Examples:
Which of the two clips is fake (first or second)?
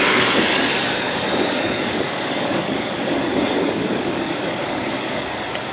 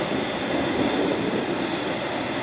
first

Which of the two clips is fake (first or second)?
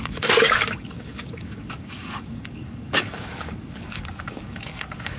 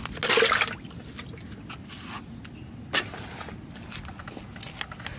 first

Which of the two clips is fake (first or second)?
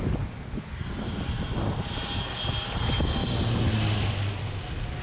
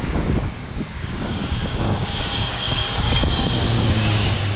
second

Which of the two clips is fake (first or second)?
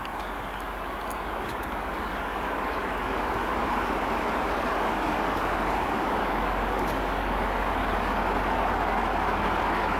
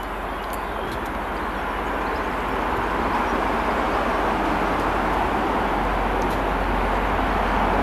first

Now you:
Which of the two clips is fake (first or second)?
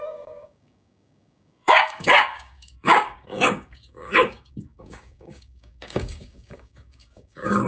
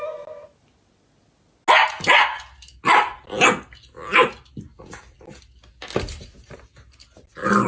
first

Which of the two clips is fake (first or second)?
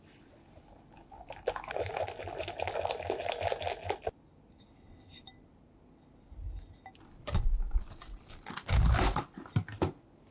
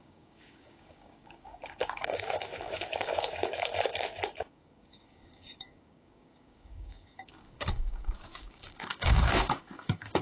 second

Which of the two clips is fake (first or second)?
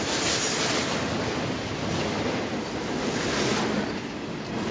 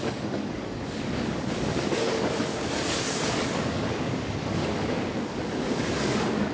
second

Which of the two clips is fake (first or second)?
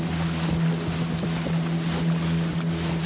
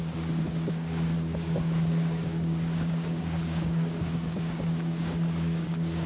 second